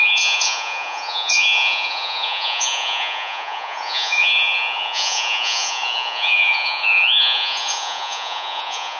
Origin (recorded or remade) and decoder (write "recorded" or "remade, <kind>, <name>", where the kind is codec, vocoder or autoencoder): remade, vocoder, Vocos